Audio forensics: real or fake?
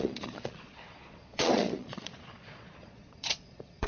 fake